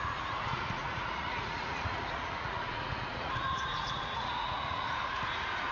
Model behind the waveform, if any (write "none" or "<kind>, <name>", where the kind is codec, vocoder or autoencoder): vocoder, Vocos